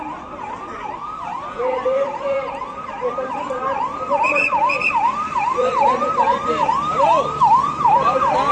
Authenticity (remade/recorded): remade